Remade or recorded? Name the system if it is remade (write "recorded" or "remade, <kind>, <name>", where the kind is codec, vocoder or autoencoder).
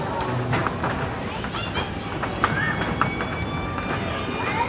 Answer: recorded